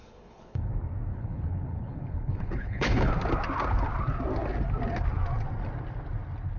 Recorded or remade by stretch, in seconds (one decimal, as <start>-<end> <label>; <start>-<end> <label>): 0.0-0.7 remade; 0.7-1.1 recorded; 1.1-3.1 remade; 3.1-6.6 recorded